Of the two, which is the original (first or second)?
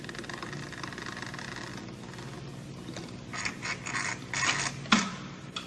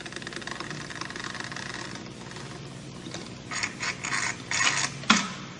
first